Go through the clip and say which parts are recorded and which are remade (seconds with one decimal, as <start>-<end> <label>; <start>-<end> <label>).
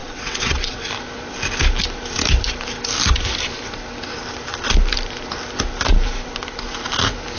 0.0-0.9 remade; 0.9-7.4 recorded